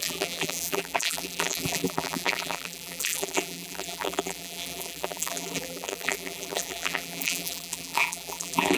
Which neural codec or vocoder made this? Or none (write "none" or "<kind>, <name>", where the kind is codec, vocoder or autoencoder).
vocoder, BigVGAN v2